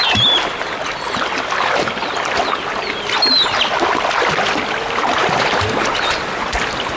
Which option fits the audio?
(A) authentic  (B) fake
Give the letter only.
A